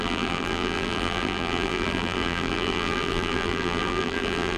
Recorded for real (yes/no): no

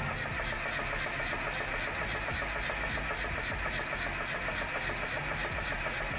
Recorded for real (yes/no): yes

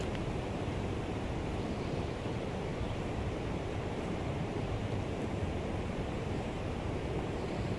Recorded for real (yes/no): no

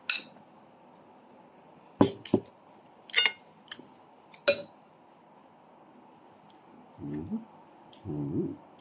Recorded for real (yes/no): yes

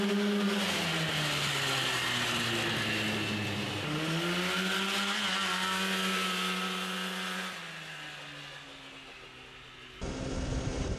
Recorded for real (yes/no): yes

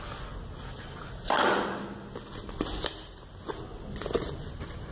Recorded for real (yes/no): yes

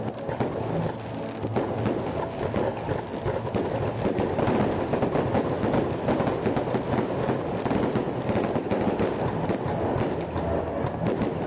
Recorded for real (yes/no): yes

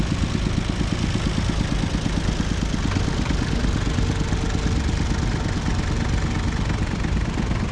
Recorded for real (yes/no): yes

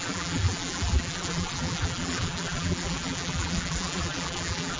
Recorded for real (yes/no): no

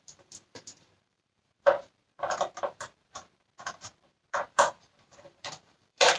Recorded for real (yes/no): no